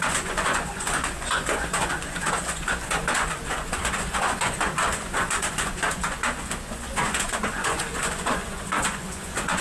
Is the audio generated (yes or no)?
yes